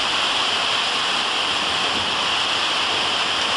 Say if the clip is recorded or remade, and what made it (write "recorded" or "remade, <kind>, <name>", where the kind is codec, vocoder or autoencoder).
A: recorded